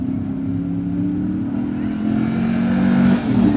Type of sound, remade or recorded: recorded